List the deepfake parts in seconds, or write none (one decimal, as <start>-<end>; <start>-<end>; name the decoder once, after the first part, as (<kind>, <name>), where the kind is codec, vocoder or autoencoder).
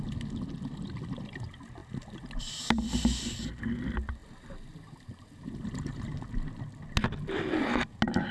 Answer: none